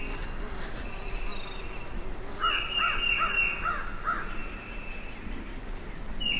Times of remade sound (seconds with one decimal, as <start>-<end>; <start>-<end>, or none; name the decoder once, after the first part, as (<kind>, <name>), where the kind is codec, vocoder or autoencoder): none